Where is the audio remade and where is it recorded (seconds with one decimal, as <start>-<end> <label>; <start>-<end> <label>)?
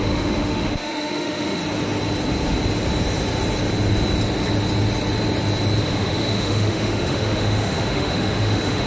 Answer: 0.0-1.6 remade; 1.6-5.8 recorded; 5.8-8.9 remade